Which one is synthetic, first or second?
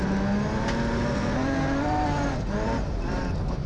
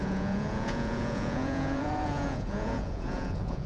second